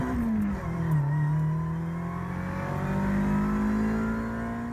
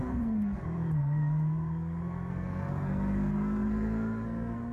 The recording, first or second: first